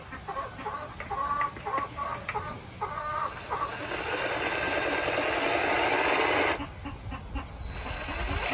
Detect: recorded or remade recorded